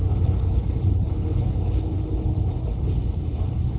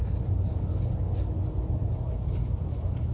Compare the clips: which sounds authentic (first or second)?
second